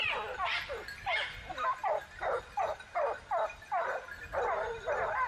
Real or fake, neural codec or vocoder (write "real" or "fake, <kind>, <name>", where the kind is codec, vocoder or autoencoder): real